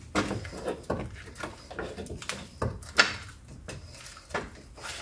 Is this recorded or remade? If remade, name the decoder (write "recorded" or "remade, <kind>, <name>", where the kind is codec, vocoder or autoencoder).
recorded